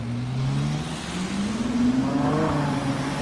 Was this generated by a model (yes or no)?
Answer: no